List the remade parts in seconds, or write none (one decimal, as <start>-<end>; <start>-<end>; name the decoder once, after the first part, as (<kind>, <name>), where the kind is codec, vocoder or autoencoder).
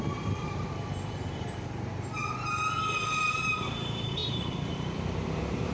0.0-2.2 (vocoder, BigVGAN v2); 3.3-5.7